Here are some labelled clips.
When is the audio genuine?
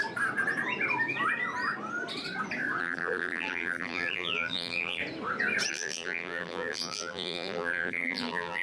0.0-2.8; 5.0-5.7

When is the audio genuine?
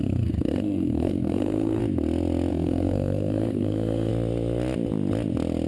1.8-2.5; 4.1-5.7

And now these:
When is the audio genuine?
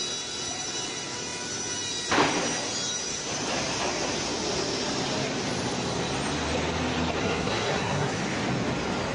0.0-7.2; 8.2-9.1